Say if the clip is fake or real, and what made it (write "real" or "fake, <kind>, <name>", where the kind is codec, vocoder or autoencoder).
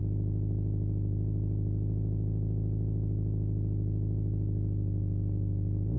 real